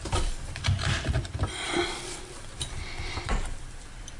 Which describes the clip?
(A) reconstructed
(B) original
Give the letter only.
A